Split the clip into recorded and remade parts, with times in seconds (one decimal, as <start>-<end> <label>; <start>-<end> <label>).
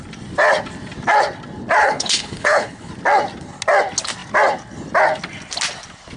0.0-1.8 recorded; 1.8-2.9 remade; 2.9-6.2 recorded